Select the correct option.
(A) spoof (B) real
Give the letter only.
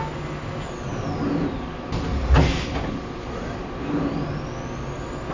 B